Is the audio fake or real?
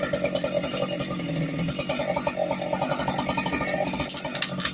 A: real